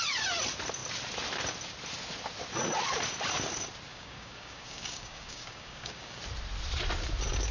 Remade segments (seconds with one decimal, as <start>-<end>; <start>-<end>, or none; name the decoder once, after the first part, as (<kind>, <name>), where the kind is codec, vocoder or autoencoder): 3.9-6.2 (codec, DAC)